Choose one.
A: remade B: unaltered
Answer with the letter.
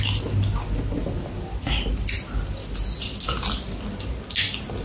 B